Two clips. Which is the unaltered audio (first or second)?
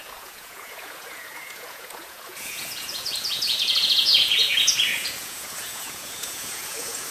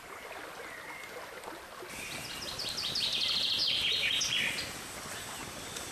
second